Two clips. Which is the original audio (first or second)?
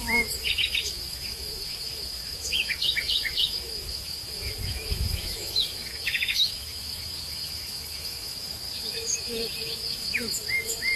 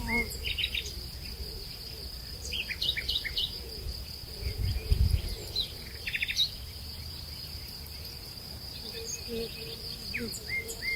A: second